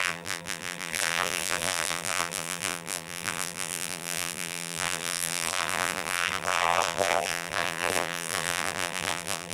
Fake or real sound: fake